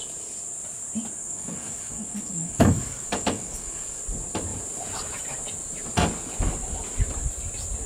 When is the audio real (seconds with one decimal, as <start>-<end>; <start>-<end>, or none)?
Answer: 0.0-1.2; 4.0-7.9